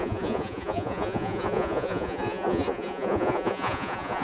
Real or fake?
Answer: fake